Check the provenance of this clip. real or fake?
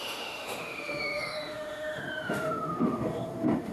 fake